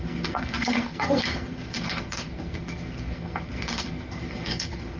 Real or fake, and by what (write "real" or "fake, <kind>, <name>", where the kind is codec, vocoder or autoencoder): fake, codec, SNAC